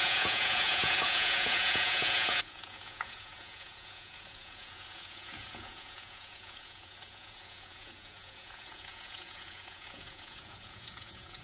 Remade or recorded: remade